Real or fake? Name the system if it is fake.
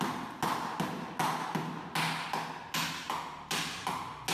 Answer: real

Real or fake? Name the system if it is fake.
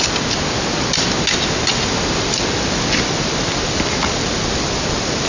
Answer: real